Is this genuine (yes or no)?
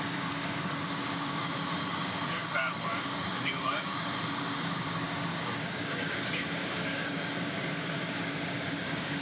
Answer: no